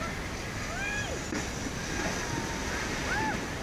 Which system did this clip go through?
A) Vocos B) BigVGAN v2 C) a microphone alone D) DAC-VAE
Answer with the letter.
C